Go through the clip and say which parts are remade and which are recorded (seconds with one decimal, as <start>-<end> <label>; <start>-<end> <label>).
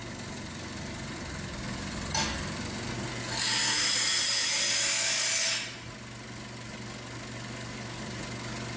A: 0.0-8.8 recorded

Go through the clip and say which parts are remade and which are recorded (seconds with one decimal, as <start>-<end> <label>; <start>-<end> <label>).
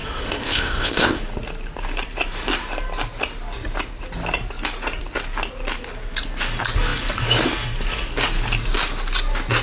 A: 0.0-1.2 remade; 1.2-9.6 recorded